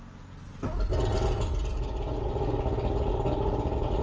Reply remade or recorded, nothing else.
recorded